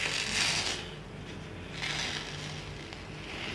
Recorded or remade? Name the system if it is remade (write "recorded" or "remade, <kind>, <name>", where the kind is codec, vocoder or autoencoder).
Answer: recorded